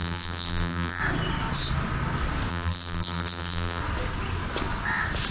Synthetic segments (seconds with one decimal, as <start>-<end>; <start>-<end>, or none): 0.0-1.0; 2.5-3.8